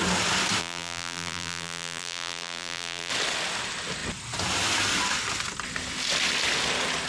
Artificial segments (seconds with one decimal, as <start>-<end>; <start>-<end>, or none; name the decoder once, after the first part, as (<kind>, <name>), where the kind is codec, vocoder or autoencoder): 0.6-3.1 (vocoder, BigVGAN v2)